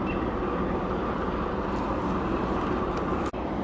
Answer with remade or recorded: recorded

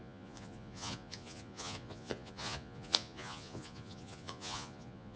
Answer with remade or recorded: remade